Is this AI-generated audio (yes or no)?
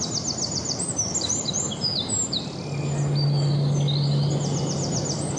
no